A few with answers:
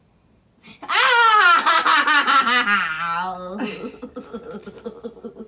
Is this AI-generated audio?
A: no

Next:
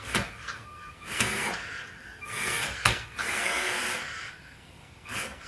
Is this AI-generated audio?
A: yes